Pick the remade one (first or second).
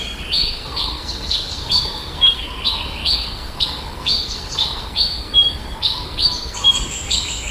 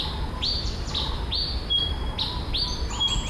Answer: first